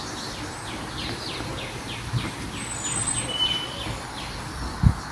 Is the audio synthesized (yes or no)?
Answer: no